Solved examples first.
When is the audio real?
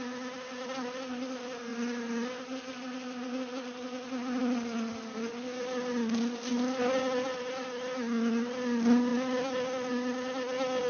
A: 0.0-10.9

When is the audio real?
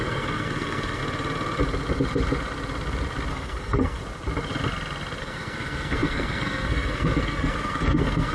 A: 1.0-3.3; 4.0-5.2